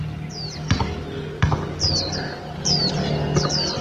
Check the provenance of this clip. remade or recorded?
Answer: recorded